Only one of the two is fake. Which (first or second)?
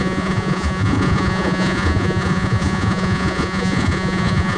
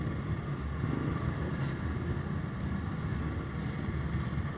first